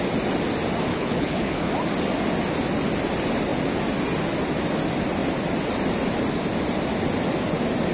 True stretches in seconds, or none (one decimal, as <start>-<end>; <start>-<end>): 0.0-0.9; 1.7-7.9